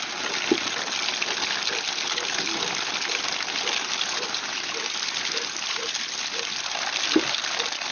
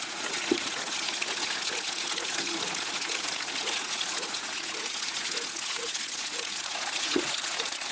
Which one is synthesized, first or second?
second